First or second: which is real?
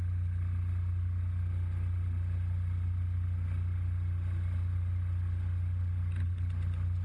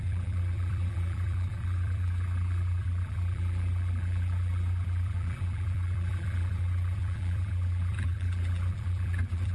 first